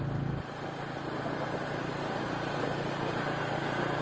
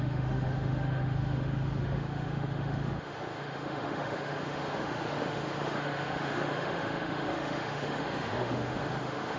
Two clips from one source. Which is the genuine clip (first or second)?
first